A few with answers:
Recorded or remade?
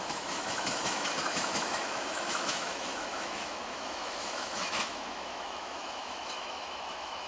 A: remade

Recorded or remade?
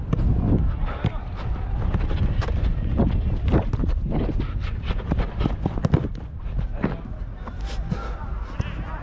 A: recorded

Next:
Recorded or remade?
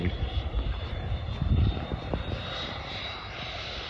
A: remade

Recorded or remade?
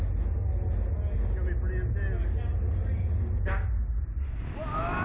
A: recorded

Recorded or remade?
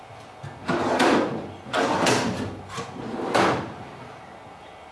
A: recorded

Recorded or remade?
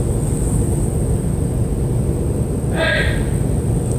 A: recorded